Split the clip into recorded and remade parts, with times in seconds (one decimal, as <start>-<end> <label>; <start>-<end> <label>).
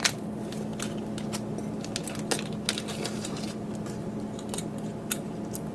0.0-5.7 recorded